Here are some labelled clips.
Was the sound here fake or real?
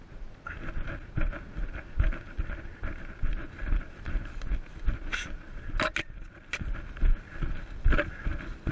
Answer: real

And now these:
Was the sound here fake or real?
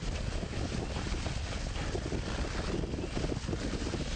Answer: real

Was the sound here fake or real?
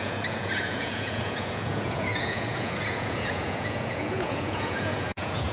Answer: fake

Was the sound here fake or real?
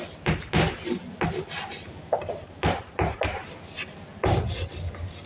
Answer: real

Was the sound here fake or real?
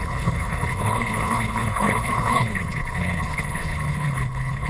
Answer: fake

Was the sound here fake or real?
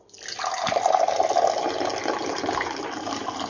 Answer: real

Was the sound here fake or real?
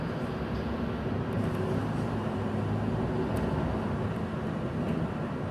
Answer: real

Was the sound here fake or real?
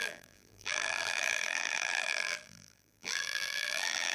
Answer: fake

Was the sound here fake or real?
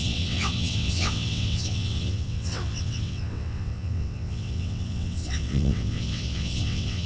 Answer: fake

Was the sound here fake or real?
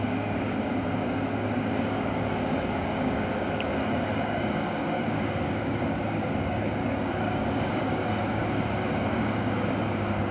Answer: fake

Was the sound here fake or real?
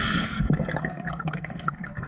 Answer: fake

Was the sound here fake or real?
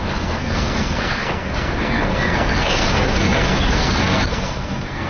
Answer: fake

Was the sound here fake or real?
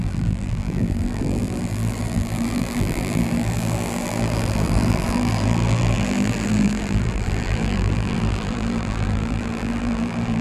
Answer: fake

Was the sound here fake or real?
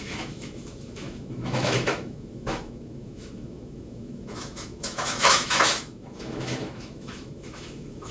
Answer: fake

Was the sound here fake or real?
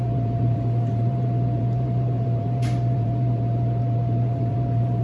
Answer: fake